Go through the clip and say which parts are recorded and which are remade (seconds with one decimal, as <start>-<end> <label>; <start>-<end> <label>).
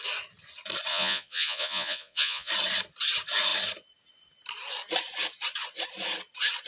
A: 0.0-0.9 recorded; 0.9-2.5 remade; 2.5-6.7 recorded